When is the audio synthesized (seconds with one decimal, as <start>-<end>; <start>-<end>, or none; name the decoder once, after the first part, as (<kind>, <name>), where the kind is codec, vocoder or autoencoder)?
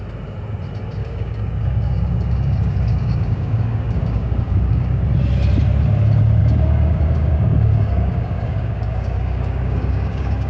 1.0-5.0 (codec, DAC); 6.4-10.5